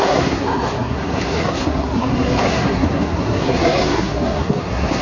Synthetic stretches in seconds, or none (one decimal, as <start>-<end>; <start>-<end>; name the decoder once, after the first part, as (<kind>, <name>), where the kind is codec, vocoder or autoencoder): 0.0-5.0 (codec, SNAC)